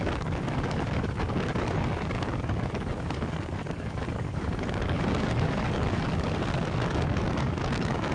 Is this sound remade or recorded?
remade